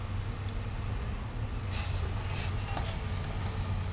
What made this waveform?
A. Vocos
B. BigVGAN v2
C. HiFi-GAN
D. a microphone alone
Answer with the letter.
D